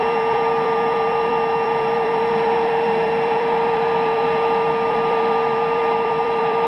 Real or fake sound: fake